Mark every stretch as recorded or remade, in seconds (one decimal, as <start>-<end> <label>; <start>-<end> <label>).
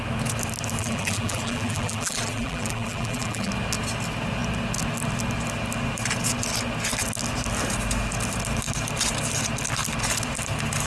0.0-0.8 recorded; 0.8-3.5 remade; 3.5-10.9 recorded